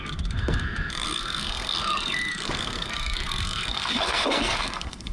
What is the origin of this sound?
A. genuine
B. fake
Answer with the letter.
B